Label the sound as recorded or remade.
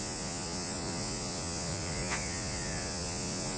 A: remade